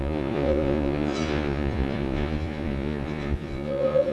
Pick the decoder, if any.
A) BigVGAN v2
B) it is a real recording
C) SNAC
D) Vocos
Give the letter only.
D